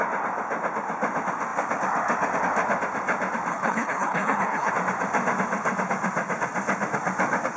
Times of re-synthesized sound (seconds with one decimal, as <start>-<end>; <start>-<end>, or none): 3.5-4.7